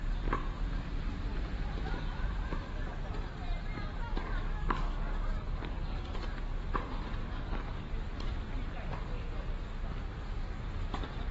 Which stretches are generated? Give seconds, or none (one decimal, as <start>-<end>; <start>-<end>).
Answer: 4.2-6.2; 7.2-7.9